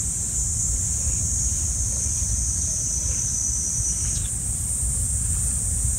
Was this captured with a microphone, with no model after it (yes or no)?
yes